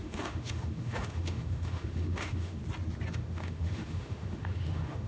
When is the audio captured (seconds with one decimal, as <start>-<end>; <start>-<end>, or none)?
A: 2.6-3.1

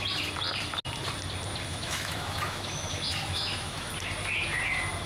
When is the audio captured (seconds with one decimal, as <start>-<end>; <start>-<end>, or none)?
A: 0.0-1.7; 3.9-5.1

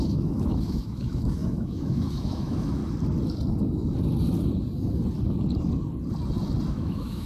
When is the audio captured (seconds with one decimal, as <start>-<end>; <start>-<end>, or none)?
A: 2.8-6.7